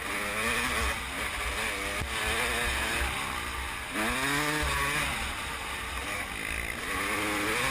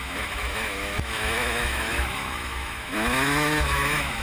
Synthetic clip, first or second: second